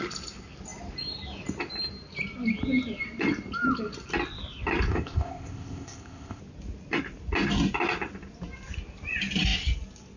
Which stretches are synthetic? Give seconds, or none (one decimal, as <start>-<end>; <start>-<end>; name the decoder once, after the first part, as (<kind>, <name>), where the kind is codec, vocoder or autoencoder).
4.9-6.4 (codec, ZipCodec)